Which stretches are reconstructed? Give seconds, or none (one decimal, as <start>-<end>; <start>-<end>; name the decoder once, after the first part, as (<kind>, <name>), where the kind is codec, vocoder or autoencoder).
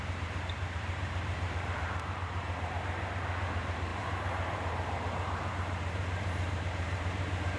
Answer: 0.0-7.6 (vocoder, BigVGAN v2)